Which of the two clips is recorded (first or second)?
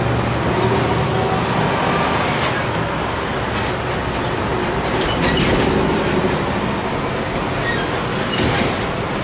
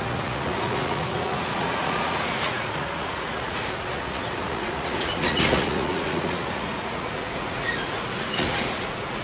first